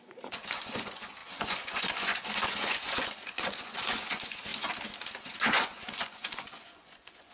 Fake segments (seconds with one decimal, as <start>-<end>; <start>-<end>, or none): 0.0-4.5; 5.2-7.3